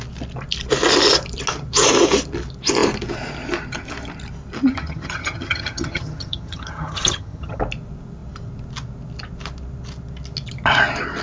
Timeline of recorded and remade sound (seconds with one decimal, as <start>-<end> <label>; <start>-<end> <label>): 0.0-4.7 recorded; 4.7-7.6 remade; 7.6-11.2 recorded